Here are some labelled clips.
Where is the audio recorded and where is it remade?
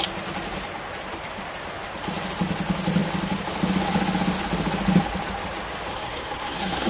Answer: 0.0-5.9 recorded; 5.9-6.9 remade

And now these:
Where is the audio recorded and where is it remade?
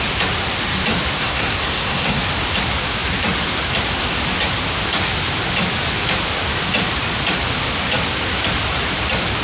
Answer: 0.0-1.2 recorded; 1.2-2.2 remade; 2.2-9.4 recorded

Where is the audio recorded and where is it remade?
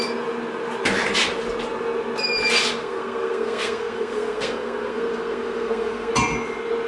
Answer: 0.0-2.8 recorded; 2.8-6.1 remade; 6.1-6.9 recorded